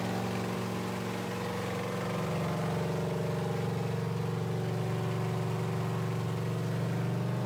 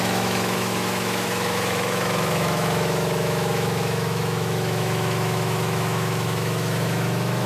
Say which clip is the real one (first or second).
first